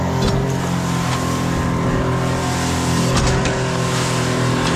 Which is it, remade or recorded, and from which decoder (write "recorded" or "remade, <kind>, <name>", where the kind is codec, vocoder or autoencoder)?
recorded